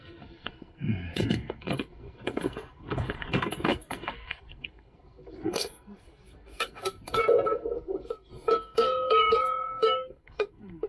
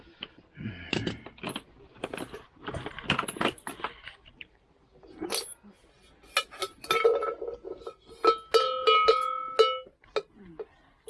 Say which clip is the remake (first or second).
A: first